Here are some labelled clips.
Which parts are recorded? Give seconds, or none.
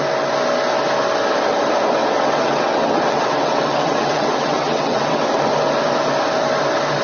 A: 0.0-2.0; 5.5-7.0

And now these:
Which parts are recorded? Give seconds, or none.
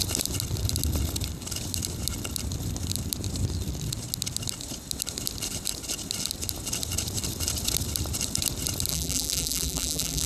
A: 0.0-8.9